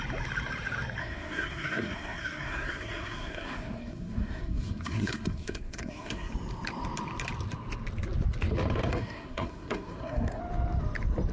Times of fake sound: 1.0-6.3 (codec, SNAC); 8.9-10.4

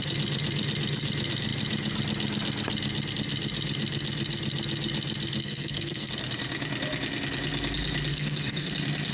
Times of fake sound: 5.4-6.1 (codec, SNAC); 8.1-8.7

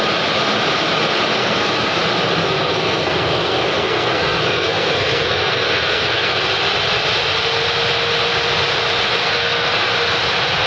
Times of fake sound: 1.4-2.0 (codec, SNAC); 2.4-6.4; 9.2-9.9

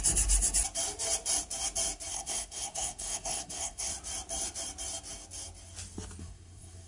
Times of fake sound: 2.1-3.9 (codec, SNAC); 6.2-6.9